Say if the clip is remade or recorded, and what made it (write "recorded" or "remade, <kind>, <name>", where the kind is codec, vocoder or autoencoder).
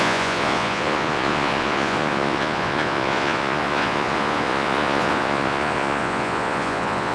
remade, vocoder, Vocos